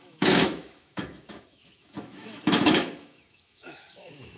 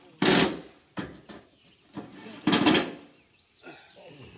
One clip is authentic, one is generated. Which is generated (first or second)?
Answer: first